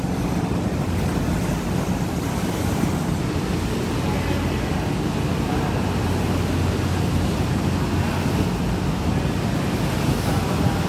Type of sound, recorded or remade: recorded